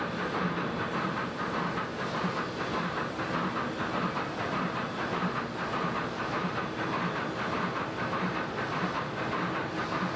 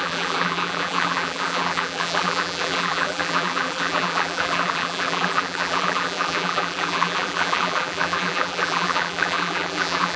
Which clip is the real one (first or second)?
first